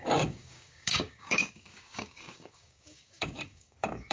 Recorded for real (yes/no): no